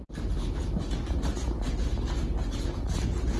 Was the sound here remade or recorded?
recorded